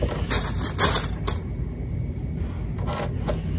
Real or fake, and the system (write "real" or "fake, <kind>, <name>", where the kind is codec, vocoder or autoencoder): real